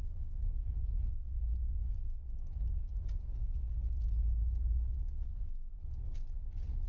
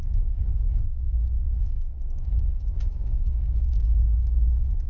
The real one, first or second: first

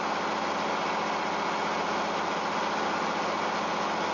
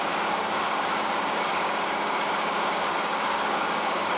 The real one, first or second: first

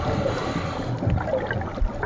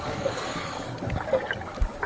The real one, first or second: first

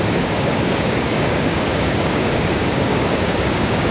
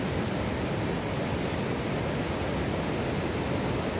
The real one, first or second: second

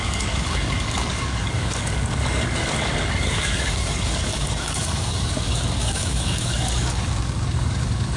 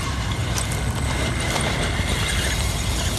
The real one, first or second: second